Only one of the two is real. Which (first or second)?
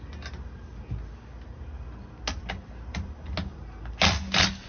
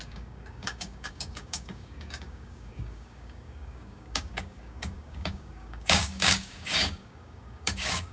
first